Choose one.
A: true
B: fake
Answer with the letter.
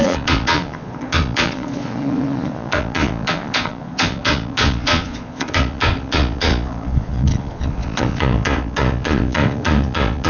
B